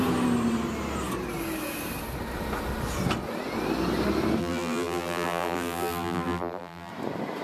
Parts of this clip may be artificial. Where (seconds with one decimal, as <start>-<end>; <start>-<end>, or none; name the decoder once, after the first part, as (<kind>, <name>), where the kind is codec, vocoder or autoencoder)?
4.4-6.9 (vocoder, BigVGAN v2)

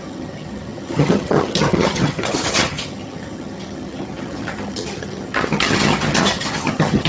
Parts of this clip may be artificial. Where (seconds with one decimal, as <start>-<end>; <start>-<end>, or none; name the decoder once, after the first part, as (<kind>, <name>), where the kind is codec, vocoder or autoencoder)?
0.0-7.1 (vocoder, HiFi-GAN)

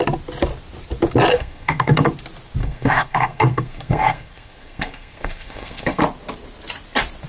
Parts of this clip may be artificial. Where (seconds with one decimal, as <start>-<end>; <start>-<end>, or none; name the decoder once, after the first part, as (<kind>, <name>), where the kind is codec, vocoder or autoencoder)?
1.3-2.0 (codec, SNAC); 2.6-6.0

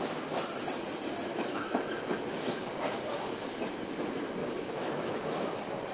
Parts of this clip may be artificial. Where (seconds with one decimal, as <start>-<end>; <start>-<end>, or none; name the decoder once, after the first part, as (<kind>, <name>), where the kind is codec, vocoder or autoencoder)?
1.3-2.7 (autoencoder, DAC-VAE); 4.4-5.5